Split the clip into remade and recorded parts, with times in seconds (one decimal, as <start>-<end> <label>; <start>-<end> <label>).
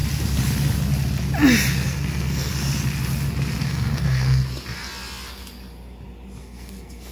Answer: 0.0-1.7 recorded; 1.7-2.5 remade; 2.5-3.6 recorded; 3.6-4.4 remade; 4.4-6.4 recorded; 6.4-7.1 remade